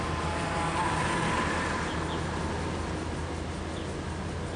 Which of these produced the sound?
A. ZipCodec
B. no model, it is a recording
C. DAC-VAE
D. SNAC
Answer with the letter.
B